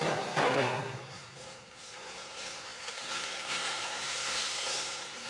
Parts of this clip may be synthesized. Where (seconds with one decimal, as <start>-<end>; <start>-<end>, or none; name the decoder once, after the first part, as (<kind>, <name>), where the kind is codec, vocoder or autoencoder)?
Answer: 0.0-5.3 (codec, SNAC)